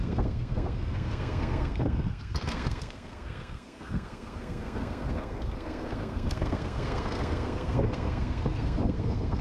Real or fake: fake